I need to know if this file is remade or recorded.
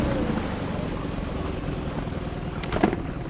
recorded